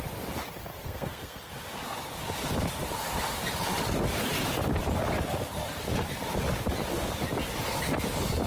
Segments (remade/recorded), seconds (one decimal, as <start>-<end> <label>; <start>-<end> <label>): 0.0-0.7 recorded; 0.7-1.5 remade; 1.5-8.5 recorded